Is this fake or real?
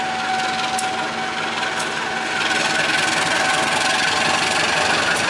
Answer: real